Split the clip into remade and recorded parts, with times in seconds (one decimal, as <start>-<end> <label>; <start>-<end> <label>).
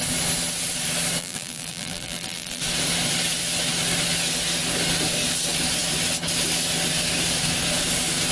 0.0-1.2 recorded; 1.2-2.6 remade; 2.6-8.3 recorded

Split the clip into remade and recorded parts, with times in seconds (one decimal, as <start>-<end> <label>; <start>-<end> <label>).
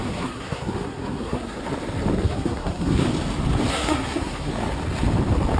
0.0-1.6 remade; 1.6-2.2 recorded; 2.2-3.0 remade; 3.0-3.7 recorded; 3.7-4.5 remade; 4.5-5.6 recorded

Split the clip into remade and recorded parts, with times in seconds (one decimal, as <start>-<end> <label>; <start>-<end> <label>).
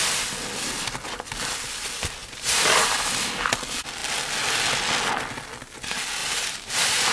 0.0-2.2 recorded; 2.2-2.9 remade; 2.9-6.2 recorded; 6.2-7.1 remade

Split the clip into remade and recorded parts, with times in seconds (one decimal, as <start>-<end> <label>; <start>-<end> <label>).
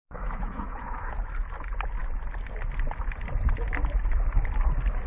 0.0-1.1 remade; 1.1-5.1 recorded